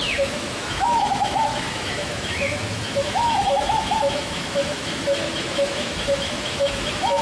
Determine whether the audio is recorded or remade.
remade